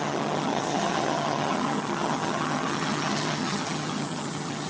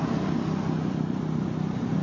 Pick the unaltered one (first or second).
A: second